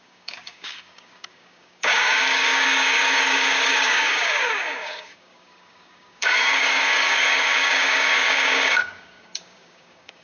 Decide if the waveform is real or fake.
fake